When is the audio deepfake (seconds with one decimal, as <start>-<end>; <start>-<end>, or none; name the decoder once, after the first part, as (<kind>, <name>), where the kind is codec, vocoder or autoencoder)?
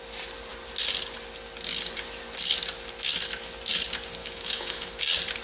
4.2-5.0 (autoencoder, DAC-VAE)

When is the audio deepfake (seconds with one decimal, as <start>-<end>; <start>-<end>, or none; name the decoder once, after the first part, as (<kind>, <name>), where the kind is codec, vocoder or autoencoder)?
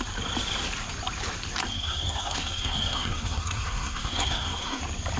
1.7-4.8 (codec, SNAC)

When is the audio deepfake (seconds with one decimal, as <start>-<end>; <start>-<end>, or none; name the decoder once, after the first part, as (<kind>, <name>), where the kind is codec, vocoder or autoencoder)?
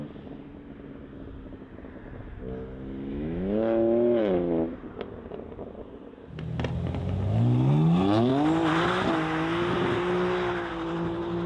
3.1-4.2 (autoencoder, DAC-VAE)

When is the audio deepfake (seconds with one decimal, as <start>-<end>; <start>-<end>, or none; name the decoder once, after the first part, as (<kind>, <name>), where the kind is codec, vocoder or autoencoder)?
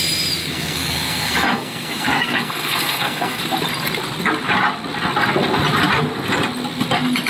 0.4-3.4 (codec, SNAC)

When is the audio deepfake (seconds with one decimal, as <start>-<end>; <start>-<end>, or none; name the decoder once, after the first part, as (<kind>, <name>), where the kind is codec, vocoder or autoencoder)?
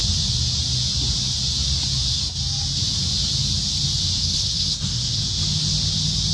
4.2-5.2 (codec, SNAC)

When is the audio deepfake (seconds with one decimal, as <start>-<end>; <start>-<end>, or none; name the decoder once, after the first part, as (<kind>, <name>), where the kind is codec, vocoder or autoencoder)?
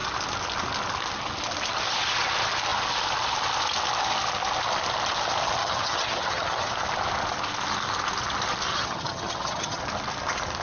5.6-6.7 (vocoder, HiFi-GAN); 8.7-9.8